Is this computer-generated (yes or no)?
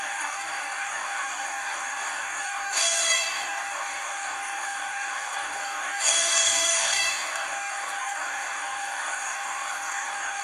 yes